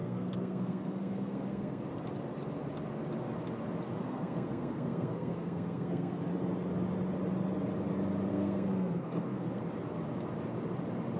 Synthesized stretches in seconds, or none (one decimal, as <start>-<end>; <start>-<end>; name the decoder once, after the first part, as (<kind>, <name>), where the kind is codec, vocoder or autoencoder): 0.0-1.8 (codec, SNAC); 4.0-6.2; 8.3-9.6